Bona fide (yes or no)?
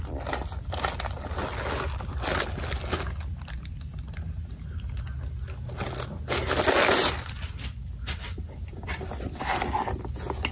yes